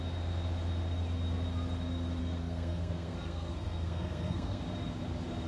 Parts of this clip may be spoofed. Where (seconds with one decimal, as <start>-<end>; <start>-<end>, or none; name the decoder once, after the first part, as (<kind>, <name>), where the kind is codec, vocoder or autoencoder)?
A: 2.2-4.6 (codec, SNAC)